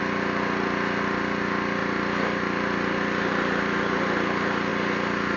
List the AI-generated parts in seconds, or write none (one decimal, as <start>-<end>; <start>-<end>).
none